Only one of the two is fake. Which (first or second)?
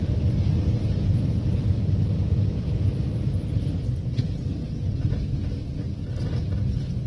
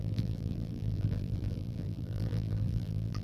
second